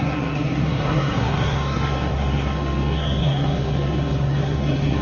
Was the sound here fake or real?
fake